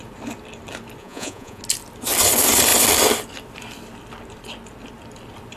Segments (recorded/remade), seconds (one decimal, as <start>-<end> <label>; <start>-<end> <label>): 0.0-1.0 recorded; 1.0-1.6 remade; 1.6-5.6 recorded